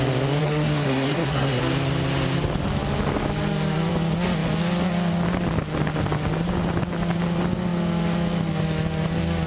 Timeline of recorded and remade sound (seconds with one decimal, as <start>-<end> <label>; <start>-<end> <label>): 0.0-0.4 recorded; 0.4-1.6 remade; 1.6-9.5 recorded